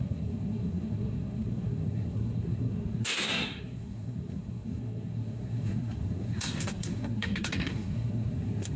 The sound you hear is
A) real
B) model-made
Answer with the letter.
B